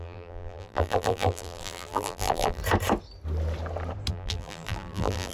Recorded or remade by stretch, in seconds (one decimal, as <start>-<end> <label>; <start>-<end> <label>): 0.0-2.6 remade; 2.6-4.1 recorded; 4.1-5.3 remade